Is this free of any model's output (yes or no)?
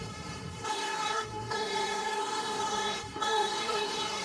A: no